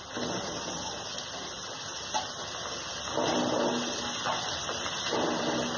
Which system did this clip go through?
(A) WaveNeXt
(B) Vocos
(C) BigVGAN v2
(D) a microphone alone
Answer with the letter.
D